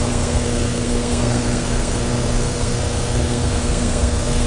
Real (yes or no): no